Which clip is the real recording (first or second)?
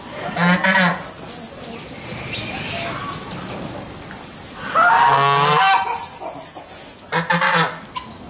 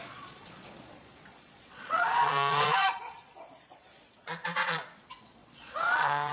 first